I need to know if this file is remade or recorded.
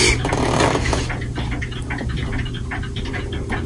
recorded